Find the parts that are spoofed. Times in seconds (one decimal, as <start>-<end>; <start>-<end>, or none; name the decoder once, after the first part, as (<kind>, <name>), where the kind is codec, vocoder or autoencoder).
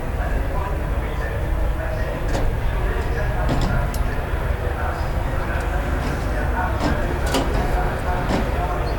none